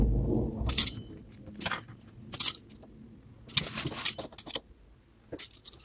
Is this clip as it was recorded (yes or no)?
yes